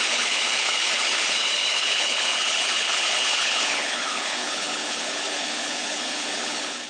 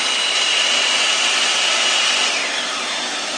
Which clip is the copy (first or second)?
first